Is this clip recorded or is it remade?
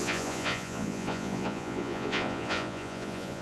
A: remade